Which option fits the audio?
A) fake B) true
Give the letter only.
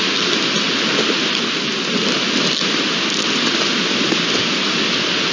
B